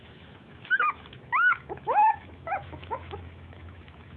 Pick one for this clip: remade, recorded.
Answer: remade